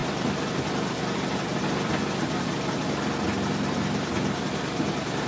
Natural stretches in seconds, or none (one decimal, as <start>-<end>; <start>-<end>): 0.0-5.3